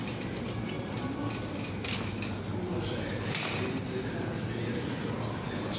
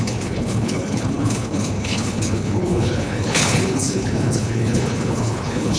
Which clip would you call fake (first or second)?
second